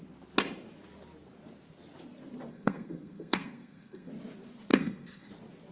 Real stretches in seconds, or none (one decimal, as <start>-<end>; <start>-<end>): 0.0-2.5; 4.1-4.7; 5.3-5.7